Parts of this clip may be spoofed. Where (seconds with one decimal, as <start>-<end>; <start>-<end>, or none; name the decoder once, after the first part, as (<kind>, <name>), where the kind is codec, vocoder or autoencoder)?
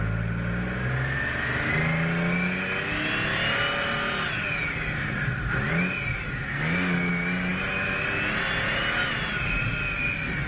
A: 6.5-7.1 (codec, SNAC)